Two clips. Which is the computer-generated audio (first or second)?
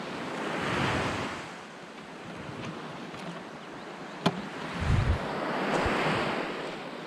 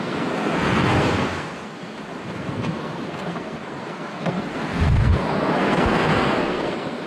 second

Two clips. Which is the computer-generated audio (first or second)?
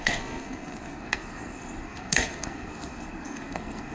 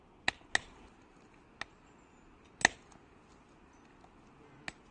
first